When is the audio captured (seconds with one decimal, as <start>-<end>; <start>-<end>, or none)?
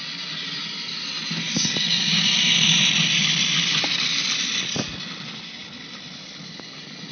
0.0-7.1